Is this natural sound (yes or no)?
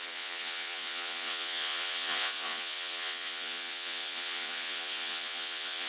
no